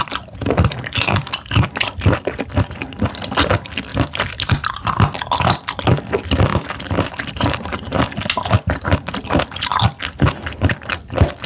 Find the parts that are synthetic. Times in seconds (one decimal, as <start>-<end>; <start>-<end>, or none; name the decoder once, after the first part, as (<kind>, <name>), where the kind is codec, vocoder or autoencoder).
3.9-4.9 (vocoder, BigVGAN v2); 6.5-8.1